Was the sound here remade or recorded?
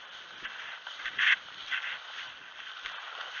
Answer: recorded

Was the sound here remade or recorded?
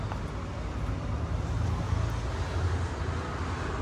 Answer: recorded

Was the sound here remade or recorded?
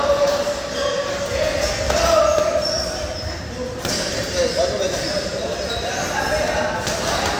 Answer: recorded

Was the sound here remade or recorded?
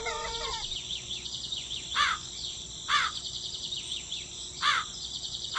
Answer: remade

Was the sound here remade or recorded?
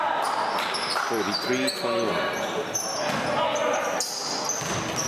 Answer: recorded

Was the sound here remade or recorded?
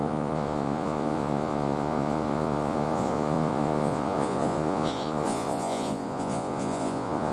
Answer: remade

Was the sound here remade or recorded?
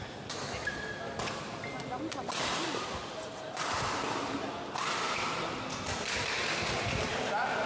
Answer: recorded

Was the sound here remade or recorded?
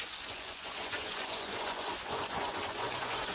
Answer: remade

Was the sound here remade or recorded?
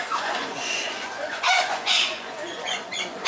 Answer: remade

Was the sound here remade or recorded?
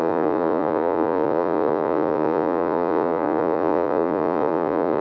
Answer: remade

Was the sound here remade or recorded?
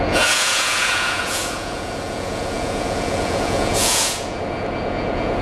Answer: remade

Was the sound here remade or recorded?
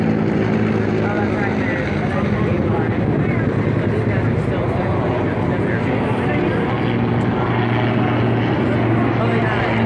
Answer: recorded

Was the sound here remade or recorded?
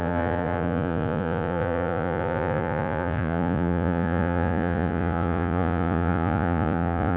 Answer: remade